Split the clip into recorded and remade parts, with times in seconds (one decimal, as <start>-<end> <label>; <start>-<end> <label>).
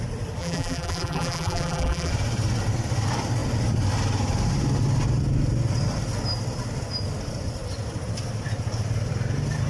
0.0-0.4 recorded; 0.4-2.1 remade; 2.1-9.7 recorded